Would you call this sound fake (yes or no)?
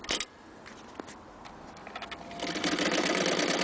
no